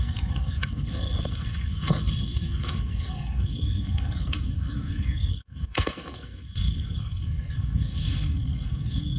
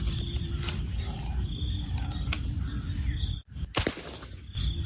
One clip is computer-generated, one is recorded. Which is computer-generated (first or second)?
first